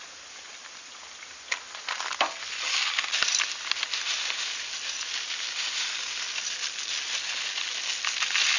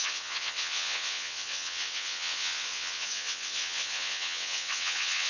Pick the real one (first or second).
first